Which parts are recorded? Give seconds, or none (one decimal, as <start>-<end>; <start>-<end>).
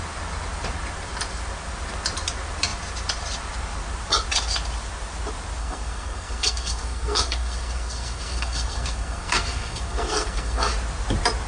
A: 0.0-5.6; 10.7-11.5